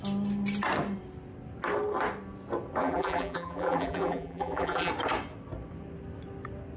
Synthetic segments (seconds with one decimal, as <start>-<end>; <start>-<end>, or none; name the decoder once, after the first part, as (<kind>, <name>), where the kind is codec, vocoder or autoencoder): 2.8-4.9 (vocoder, BigVGAN v2)